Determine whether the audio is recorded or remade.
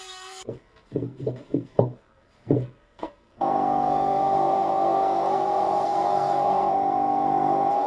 remade